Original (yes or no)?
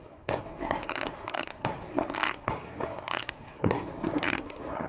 no